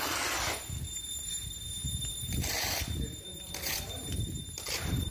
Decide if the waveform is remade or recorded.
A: remade